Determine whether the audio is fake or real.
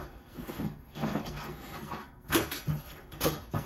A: fake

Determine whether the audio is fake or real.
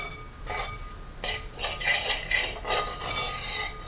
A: real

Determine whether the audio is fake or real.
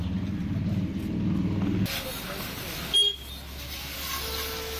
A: real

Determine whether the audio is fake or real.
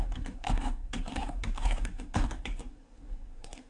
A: fake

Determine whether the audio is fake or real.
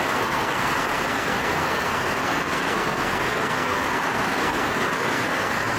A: fake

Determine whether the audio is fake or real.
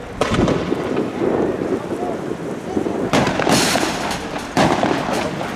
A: real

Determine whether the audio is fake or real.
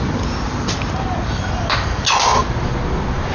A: real